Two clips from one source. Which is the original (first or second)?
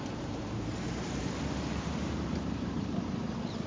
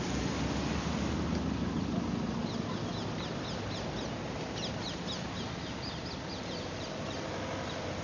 second